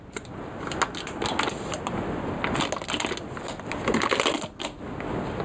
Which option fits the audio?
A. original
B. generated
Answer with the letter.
A